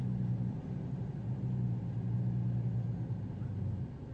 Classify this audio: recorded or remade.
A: recorded